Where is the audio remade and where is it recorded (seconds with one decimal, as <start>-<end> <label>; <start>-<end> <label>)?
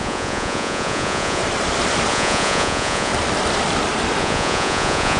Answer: 0.0-1.4 remade; 1.4-2.1 recorded; 2.1-3.1 remade; 3.1-4.2 recorded; 4.2-5.2 remade